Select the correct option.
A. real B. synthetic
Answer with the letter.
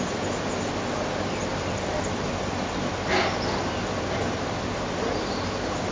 A